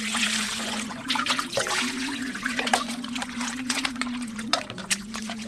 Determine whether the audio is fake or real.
fake